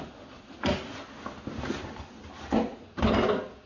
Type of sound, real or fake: real